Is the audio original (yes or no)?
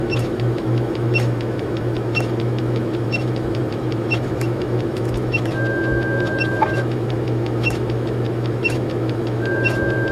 no